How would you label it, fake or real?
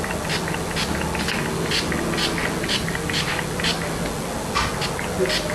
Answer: real